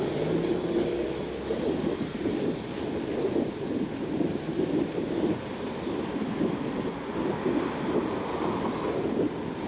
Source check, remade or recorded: recorded